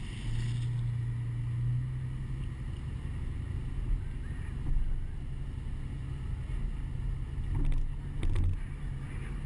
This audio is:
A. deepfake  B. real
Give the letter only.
B